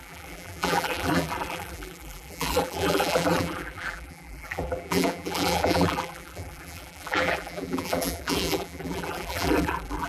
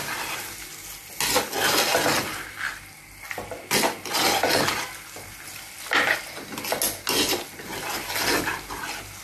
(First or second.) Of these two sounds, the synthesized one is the first